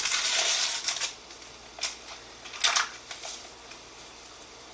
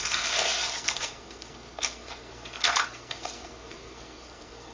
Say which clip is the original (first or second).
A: first